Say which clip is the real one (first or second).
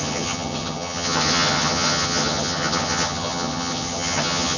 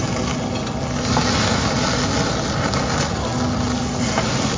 second